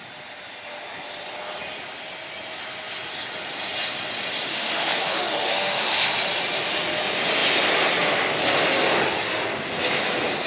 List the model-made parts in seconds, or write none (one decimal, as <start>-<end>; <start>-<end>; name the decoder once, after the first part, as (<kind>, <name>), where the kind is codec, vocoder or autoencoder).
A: 4.5-6.1 (autoencoder, DAC-VAE)